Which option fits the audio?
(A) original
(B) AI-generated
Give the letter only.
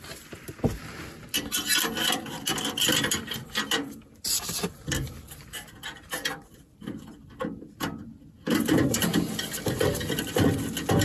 A